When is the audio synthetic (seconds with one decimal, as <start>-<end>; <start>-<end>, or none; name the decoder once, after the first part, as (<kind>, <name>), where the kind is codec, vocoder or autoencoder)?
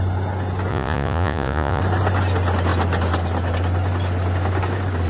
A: 0.7-1.8 (vocoder, Vocos)